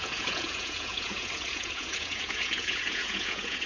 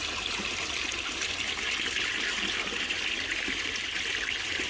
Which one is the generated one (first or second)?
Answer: first